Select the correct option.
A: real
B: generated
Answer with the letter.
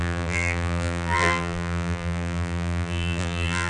B